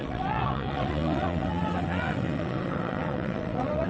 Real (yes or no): no